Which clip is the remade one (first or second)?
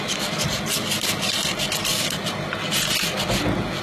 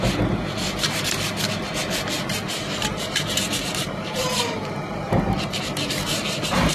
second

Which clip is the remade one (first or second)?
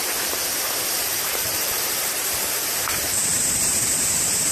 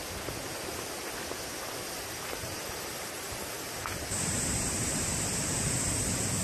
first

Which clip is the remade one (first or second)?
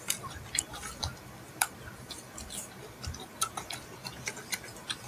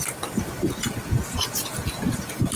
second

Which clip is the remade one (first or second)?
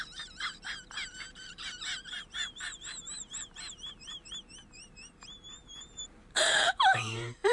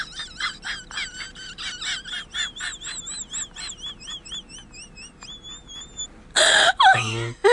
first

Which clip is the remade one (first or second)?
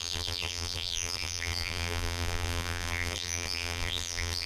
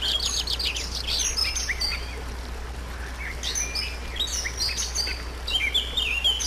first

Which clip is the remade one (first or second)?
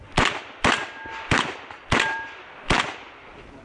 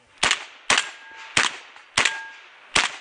first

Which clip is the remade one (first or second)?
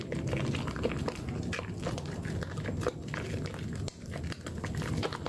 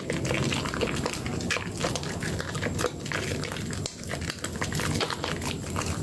first